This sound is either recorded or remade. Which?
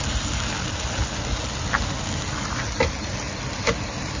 recorded